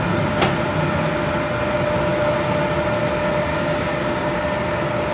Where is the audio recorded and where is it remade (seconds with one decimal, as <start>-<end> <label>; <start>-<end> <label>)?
0.0-3.5 recorded; 3.5-4.4 remade; 4.4-5.1 recorded